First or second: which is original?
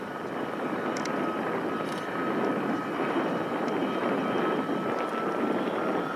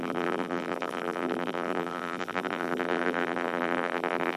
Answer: first